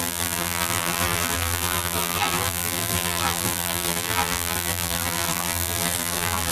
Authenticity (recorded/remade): remade